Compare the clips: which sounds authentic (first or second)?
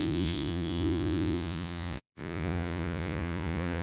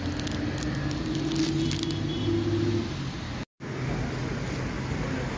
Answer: second